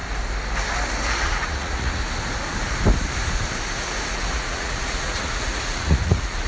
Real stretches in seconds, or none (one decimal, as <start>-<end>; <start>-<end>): 0.0-1.2; 2.0-4.1